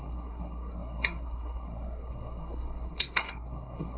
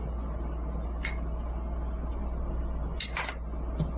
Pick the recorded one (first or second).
second